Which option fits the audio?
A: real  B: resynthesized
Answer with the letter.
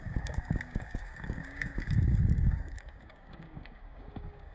B